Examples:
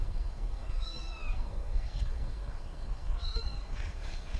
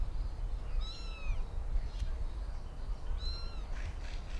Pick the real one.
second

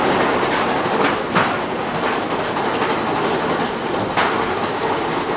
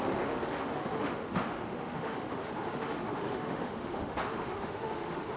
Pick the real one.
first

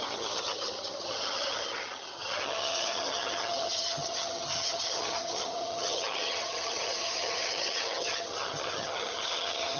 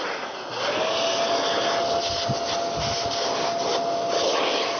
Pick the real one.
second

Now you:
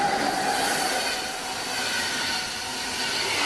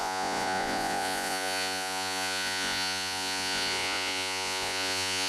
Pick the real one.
first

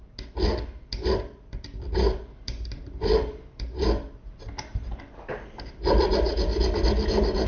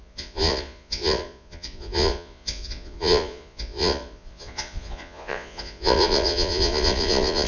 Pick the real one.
first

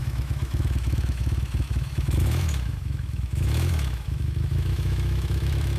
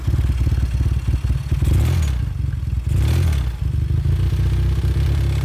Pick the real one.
second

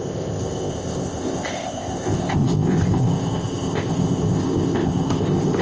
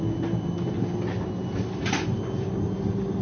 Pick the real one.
second